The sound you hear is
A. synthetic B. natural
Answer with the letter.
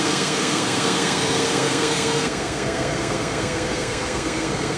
A